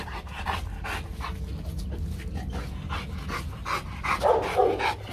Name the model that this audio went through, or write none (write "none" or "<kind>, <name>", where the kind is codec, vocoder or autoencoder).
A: none